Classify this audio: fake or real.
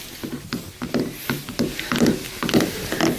real